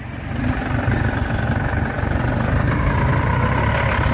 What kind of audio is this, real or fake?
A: real